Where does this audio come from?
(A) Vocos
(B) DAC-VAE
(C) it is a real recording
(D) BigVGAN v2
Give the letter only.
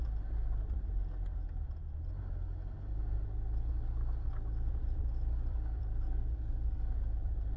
C